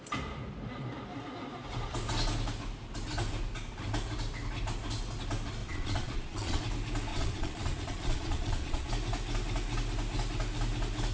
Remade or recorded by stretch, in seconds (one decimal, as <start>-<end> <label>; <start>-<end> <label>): 0.0-5.6 recorded; 5.6-6.6 remade; 6.6-7.1 recorded; 7.1-8.9 remade; 8.9-11.1 recorded